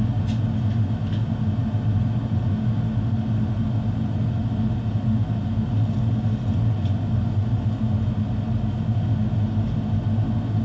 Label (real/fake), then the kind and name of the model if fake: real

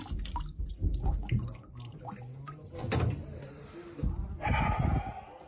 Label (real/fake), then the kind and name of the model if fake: real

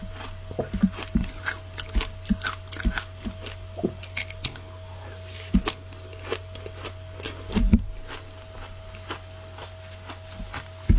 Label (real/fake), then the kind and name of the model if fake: real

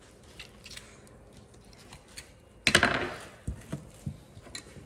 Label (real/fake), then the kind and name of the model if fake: real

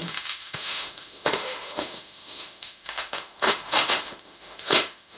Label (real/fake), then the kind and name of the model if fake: fake, autoencoder, DAC-VAE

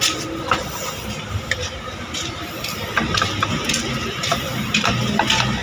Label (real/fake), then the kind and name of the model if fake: real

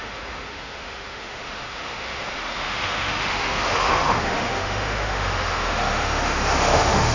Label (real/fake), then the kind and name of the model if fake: fake, autoencoder, DAC-VAE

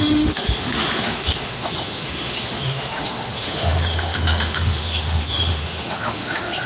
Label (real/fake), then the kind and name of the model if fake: fake, autoencoder, DAC-VAE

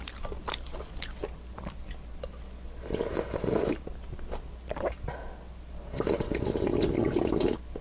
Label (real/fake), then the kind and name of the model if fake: real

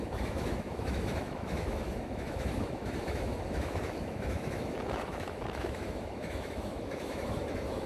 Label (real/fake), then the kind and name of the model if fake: fake, autoencoder, DAC-VAE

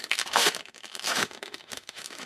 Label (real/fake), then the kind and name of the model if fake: fake, autoencoder, DAC-VAE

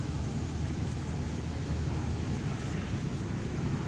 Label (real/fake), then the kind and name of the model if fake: fake, autoencoder, DAC-VAE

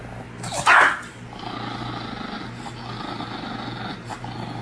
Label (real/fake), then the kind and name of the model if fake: real